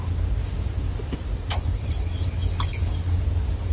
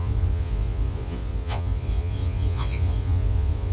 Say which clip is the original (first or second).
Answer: first